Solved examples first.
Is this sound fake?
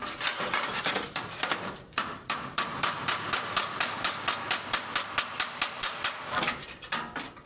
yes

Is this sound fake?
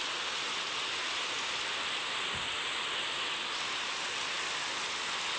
no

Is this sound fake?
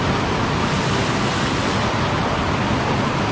no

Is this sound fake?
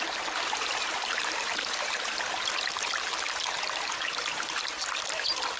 no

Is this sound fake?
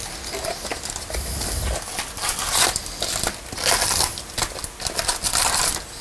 no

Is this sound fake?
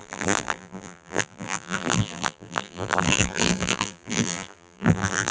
yes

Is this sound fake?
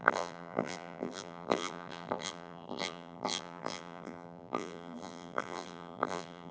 yes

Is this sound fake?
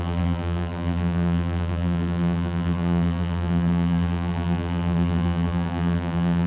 yes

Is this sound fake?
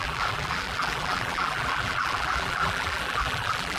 yes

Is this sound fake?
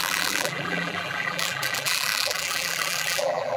yes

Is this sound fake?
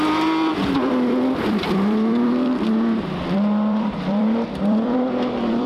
yes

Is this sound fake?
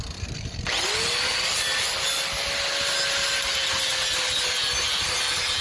no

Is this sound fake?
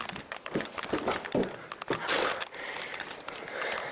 no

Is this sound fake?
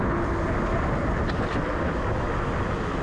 no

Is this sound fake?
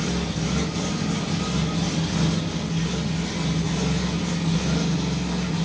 no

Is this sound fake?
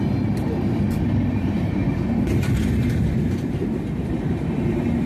yes